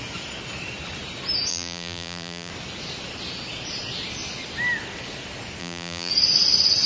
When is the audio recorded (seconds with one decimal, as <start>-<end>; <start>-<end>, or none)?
0.0-1.5; 2.5-5.6; 6.1-6.9